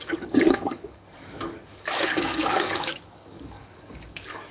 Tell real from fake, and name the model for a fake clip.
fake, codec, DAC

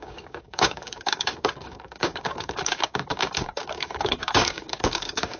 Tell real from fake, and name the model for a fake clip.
fake, codec, DAC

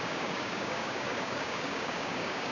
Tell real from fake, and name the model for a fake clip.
fake, codec, DAC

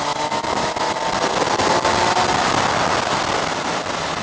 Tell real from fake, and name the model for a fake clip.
real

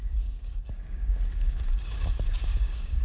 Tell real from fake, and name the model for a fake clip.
fake, codec, DAC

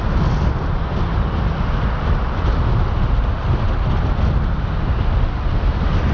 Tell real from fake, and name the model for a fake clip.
real